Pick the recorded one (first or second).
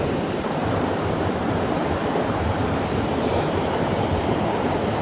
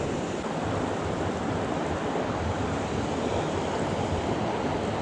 second